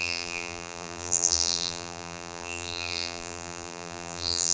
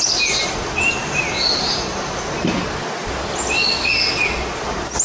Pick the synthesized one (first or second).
first